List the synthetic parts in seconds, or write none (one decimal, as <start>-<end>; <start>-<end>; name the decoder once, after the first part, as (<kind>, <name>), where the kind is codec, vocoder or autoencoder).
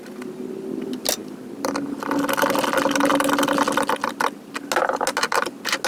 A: none